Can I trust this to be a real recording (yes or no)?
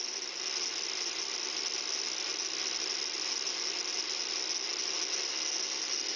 yes